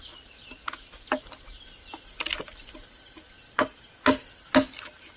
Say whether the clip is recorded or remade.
recorded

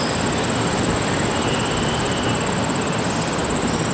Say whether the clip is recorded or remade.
recorded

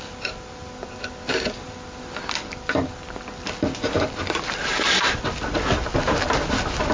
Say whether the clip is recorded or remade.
recorded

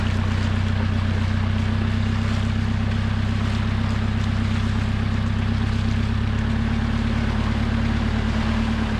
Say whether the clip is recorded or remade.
recorded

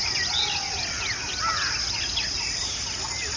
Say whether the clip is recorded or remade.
recorded